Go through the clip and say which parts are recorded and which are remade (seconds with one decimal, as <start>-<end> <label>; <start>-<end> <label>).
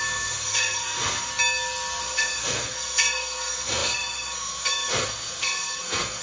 0.0-1.3 remade; 1.3-2.0 recorded; 2.0-6.2 remade